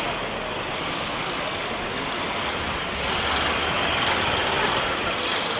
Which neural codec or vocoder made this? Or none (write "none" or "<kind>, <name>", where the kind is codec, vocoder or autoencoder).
none